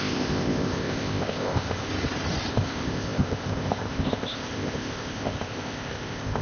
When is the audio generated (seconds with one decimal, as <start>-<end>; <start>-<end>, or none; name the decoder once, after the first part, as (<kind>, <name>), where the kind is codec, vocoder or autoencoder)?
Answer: 0.0-1.9 (codec, ZipCodec); 2.5-6.4